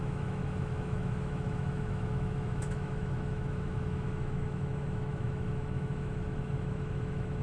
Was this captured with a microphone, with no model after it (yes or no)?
no